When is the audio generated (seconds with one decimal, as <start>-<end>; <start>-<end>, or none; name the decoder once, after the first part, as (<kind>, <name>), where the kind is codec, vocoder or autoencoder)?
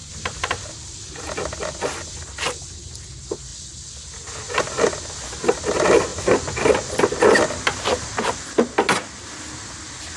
0.0-1.1 (vocoder, BigVGAN v2)